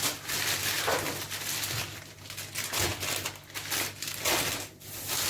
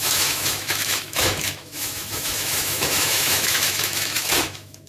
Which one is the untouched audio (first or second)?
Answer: first